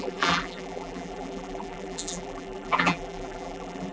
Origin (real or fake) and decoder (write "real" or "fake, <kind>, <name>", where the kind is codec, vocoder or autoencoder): fake, vocoder, BigVGAN v2